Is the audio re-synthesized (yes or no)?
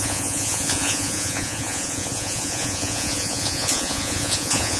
yes